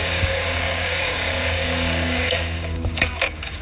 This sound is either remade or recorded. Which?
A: remade